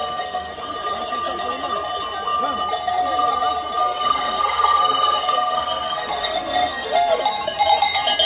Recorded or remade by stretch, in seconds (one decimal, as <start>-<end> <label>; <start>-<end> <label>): 0.0-0.5 remade; 0.5-3.8 recorded; 3.8-7.2 remade; 7.2-8.3 recorded